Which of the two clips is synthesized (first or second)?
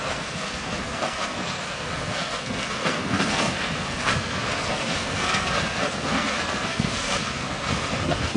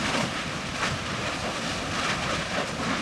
first